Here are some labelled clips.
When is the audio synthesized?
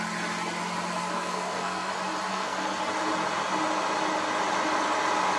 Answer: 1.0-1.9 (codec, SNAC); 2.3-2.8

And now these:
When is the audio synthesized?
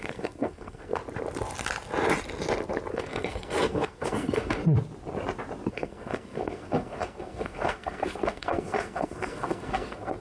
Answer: 0.0-1.0 (codec, SNAC); 2.9-4.6; 5.7-10.2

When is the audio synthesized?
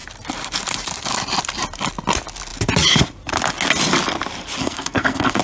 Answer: 4.6-5.4 (codec, SNAC)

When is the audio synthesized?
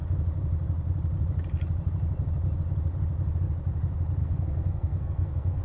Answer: 4.2-5.6 (codec, SNAC)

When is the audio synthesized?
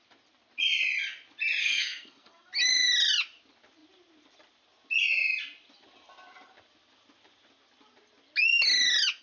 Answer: 1.6-2.5 (codec, SNAC)